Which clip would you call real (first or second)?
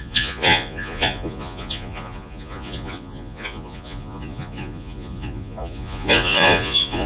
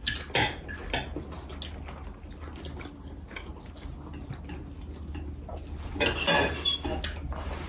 second